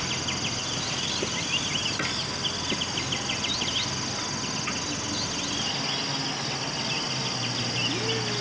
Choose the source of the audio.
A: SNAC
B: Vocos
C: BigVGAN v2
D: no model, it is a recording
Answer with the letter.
D